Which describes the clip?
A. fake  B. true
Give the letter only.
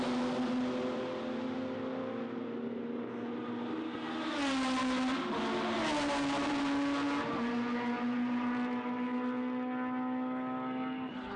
B